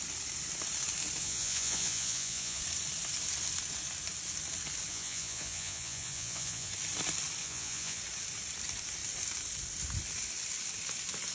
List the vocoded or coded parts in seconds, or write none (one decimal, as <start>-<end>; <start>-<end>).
1.2-2.6; 4.9-6.7; 7.4-8.0